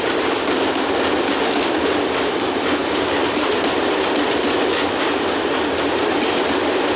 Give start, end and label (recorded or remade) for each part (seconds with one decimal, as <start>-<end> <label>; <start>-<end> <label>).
0.0-7.0 remade